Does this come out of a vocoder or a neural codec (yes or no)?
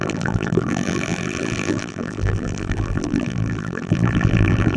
yes